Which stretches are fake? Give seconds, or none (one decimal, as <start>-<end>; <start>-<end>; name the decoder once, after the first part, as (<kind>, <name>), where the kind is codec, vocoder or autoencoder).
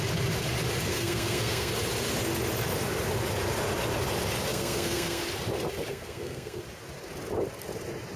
0.9-1.7 (codec, SNAC); 4.5-5.2; 5.9-6.6